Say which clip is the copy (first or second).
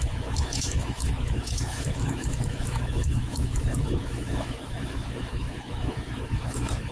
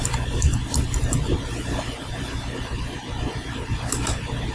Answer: first